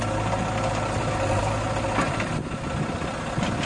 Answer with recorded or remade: recorded